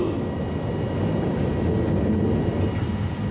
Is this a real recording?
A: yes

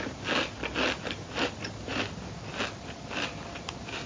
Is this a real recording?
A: yes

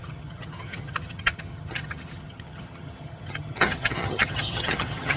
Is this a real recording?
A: no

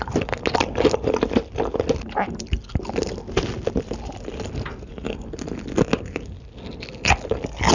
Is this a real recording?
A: yes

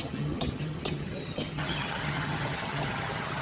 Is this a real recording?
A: no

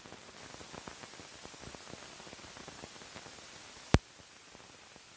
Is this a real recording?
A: yes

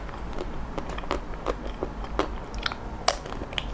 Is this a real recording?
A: yes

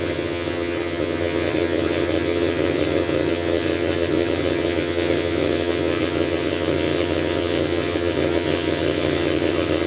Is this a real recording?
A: no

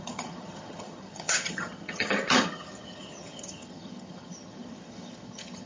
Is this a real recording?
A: no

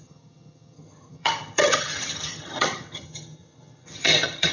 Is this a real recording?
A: no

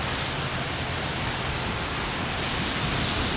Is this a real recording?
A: yes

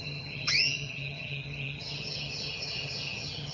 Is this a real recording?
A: no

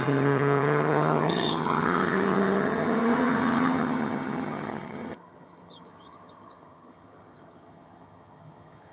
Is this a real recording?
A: no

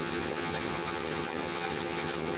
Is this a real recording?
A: no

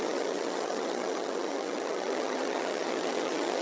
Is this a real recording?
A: no